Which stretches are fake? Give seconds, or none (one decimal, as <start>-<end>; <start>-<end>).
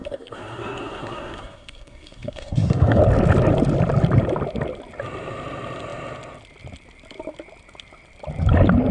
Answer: 0.0-3.0